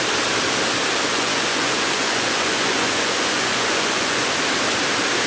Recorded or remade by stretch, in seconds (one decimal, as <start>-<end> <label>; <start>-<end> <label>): 0.0-1.1 recorded; 1.1-4.3 remade; 4.3-5.3 recorded